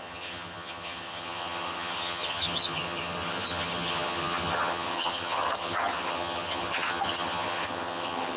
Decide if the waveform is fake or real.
fake